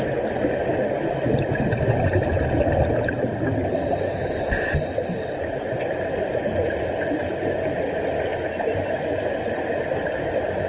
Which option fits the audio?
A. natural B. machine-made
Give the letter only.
A